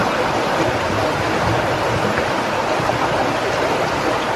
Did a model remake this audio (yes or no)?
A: no